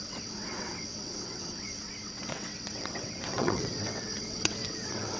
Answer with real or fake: fake